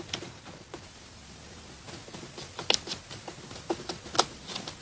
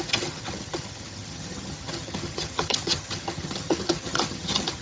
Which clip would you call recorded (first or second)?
first